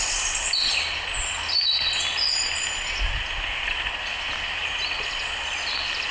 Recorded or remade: recorded